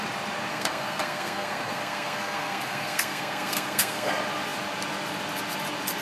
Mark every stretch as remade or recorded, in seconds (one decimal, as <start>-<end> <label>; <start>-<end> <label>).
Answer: 0.0-0.5 recorded; 0.5-4.1 remade; 4.1-6.0 recorded